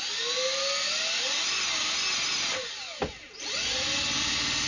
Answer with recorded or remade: recorded